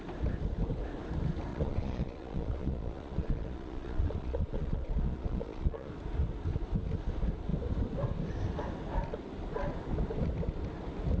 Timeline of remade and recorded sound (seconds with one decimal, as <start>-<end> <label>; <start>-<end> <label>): 0.0-1.5 recorded; 1.5-5.9 remade; 5.9-11.2 recorded